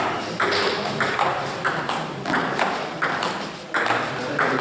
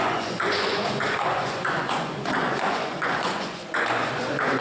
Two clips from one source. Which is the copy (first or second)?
second